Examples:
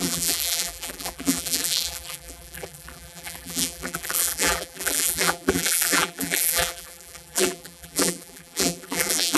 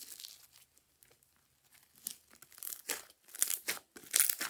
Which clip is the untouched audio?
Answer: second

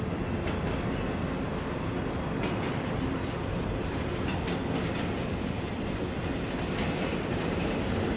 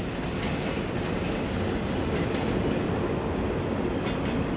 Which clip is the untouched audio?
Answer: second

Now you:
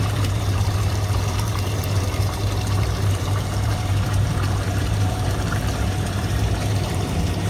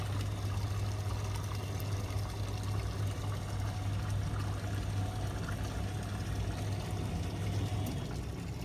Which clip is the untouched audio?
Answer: second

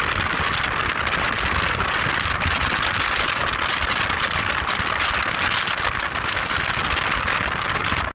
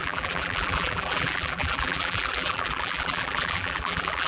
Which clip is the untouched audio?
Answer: first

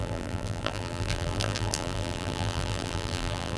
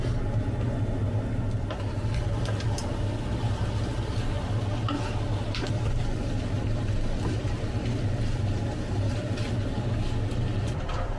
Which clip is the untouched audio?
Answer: second